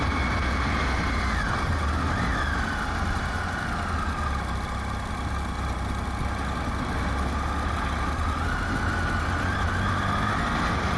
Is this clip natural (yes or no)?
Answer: yes